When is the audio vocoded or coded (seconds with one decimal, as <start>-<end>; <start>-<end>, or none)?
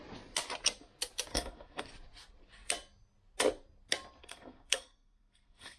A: 1.3-1.9; 4.2-5.8